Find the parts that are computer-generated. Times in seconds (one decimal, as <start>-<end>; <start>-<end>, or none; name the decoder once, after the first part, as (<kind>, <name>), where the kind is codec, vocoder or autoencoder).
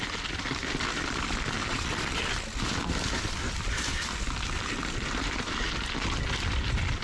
1.7-2.2 (vocoder, Vocos)